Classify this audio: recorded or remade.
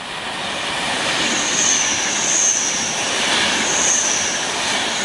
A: remade